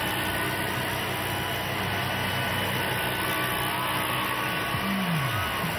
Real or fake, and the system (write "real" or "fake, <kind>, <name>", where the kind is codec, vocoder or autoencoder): real